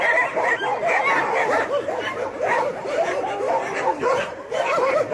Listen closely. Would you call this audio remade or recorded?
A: remade